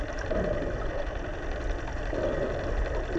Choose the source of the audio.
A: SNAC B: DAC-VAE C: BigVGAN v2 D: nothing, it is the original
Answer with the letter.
D